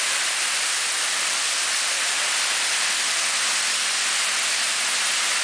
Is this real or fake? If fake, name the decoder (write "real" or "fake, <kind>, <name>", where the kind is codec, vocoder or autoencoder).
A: real